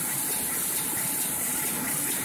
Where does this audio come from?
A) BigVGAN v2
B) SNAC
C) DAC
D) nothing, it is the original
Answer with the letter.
A